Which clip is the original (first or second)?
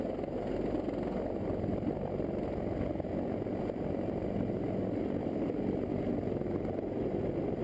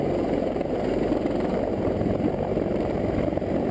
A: first